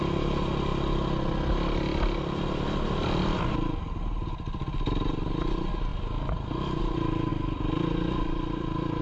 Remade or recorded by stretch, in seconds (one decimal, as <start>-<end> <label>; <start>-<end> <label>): 0.0-7.3 recorded; 7.3-9.0 remade

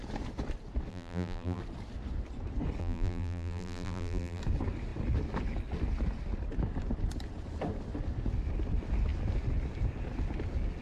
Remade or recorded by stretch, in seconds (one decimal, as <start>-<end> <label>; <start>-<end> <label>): 0.0-0.9 recorded; 0.9-1.6 remade; 1.6-2.8 recorded; 2.8-4.4 remade; 4.4-10.8 recorded

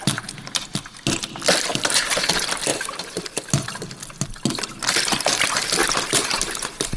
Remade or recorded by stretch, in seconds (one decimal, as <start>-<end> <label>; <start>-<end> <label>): 0.0-1.7 recorded; 1.7-2.3 remade; 2.3-2.7 recorded; 2.7-3.5 remade; 3.5-5.8 recorded; 5.8-7.0 remade

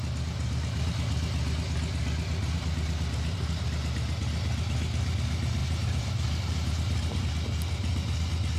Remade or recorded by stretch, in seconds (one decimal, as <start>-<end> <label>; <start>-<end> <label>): 0.0-5.6 recorded; 5.6-7.2 remade; 7.2-8.6 recorded

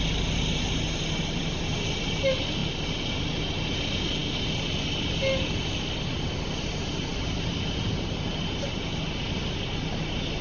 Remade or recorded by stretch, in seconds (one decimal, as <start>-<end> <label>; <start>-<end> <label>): 0.0-7.1 recorded; 7.1-8.3 remade; 8.3-10.4 recorded

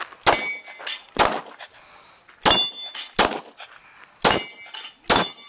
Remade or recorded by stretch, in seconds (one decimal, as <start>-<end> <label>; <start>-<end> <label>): 0.0-5.5 recorded

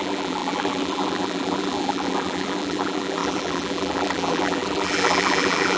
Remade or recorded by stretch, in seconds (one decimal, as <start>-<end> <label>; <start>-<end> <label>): 0.0-5.8 remade

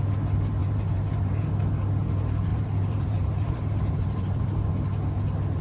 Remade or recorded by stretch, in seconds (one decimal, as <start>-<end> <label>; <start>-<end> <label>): 0.0-0.6 recorded; 0.6-1.5 remade; 1.5-2.5 recorded; 2.5-4.7 remade; 4.7-5.6 recorded